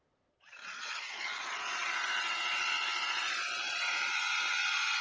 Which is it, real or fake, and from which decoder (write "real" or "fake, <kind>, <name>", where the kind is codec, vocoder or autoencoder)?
fake, vocoder, Vocos